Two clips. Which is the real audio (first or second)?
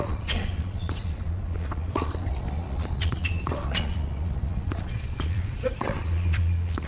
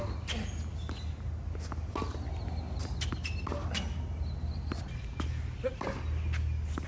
second